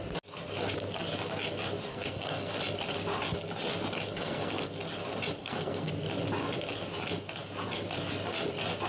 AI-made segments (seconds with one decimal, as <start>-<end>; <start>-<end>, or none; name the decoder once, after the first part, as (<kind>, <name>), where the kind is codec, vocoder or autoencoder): 1.9-2.5 (codec, SNAC); 4.1-4.7; 5.4-5.9